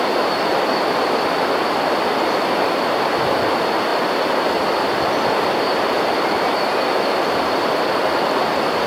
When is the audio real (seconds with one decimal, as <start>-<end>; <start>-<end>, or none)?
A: 0.0-0.5; 1.4-8.9

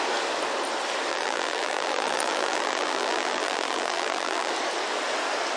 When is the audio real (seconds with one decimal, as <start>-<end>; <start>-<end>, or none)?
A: 0.0-1.1; 4.5-5.6

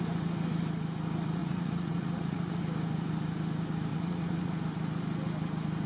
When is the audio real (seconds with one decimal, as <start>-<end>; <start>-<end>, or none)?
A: 0.0-1.4; 2.6-3.9; 4.6-5.9

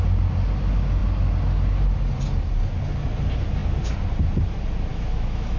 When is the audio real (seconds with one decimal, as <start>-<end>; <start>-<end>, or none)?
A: 0.0-4.9